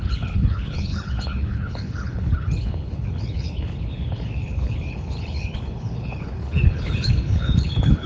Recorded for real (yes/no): no